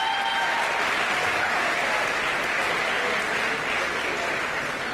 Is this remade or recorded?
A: recorded